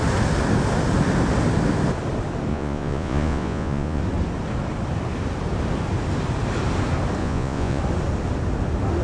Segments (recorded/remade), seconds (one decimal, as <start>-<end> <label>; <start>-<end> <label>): 0.0-2.5 recorded; 2.5-4.0 remade; 4.0-7.2 recorded; 7.2-7.8 remade; 7.8-9.0 recorded